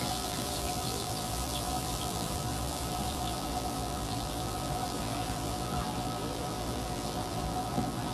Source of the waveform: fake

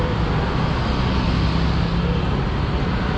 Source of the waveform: real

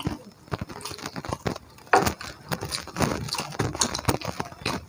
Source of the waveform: real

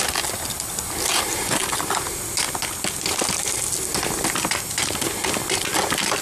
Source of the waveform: real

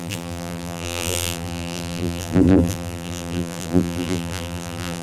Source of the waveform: fake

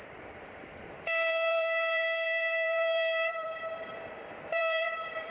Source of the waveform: fake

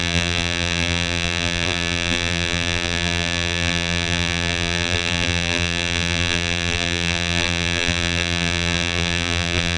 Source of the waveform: fake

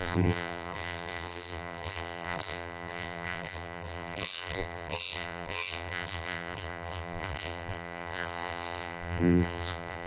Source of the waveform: fake